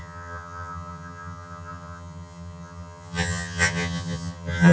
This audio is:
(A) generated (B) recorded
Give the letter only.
A